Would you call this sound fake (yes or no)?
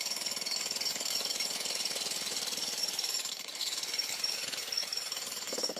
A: yes